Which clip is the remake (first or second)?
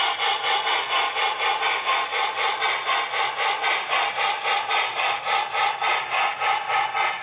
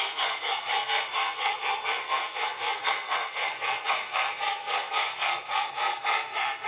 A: second